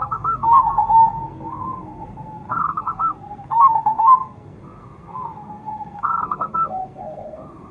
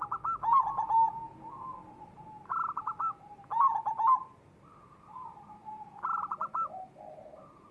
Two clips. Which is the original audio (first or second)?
second